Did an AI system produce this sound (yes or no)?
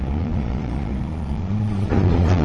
yes